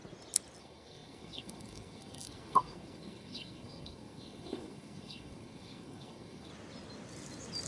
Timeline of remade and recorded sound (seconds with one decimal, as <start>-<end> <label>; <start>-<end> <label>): 0.0-0.6 recorded; 0.6-6.5 remade; 6.5-7.7 recorded

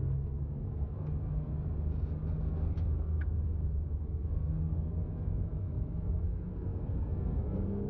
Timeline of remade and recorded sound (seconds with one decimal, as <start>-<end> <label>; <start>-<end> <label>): 0.0-1.5 remade; 1.5-2.4 recorded; 2.4-3.5 remade; 3.5-4.0 recorded; 4.0-7.9 remade

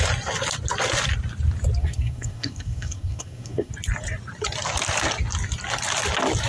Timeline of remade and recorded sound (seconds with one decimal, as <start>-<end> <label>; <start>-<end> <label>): 0.0-1.8 recorded; 1.8-3.7 remade; 3.7-6.5 recorded

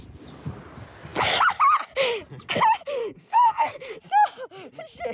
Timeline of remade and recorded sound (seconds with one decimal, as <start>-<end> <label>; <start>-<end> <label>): 0.0-3.0 recorded; 3.0-4.0 remade; 4.0-5.1 recorded

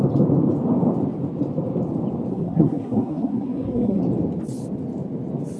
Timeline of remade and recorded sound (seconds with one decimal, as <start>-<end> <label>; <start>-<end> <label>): 0.0-2.3 recorded; 2.3-4.0 remade; 4.0-5.6 recorded

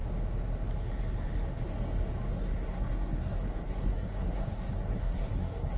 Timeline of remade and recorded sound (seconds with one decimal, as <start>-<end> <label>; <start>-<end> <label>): 0.0-2.3 recorded; 2.3-5.8 remade